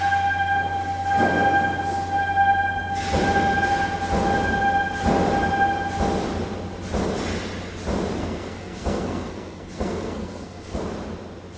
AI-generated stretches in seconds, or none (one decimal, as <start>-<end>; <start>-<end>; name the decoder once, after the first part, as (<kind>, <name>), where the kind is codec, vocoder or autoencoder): 8.2-10.8 (codec, SNAC)